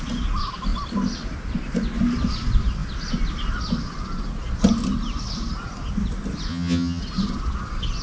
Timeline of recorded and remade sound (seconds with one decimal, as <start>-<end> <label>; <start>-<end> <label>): 0.0-6.5 recorded; 6.5-7.0 remade; 7.0-8.0 recorded